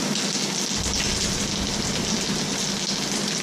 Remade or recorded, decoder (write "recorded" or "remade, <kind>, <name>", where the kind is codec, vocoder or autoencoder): recorded